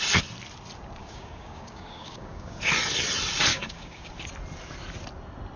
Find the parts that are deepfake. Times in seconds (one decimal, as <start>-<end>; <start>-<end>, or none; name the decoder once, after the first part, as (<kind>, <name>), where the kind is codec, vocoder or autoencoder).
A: 1.0-2.7 (codec, DAC); 3.5-4.1